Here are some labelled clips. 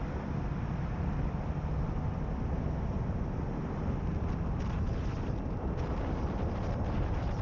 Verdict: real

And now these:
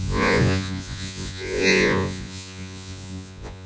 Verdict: fake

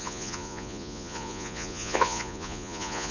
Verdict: fake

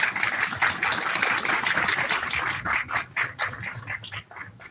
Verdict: real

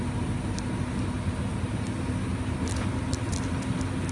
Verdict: real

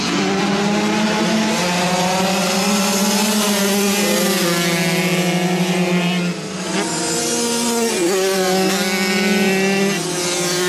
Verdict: real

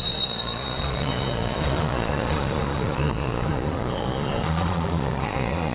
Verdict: fake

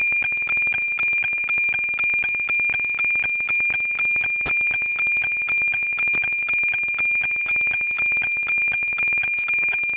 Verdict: real